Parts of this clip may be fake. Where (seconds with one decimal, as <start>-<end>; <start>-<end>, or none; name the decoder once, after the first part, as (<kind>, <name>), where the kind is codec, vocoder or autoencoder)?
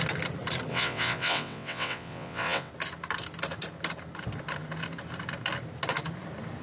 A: 0.7-2.7 (vocoder, WaveNeXt)